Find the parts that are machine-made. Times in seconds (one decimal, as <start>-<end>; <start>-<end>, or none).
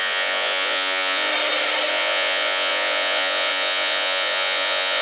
0.0-1.3; 1.9-5.0